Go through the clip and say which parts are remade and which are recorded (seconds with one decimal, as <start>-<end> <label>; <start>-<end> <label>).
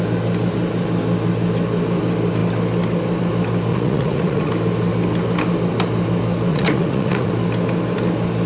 0.0-3.7 recorded; 3.7-4.5 remade; 4.5-6.5 recorded; 6.5-7.3 remade; 7.3-8.5 recorded